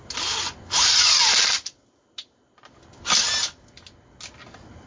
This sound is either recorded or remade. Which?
recorded